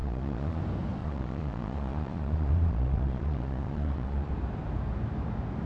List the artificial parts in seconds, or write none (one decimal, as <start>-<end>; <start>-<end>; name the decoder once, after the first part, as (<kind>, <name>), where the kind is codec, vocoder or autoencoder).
0.0-0.6 (vocoder, Vocos); 1.0-4.3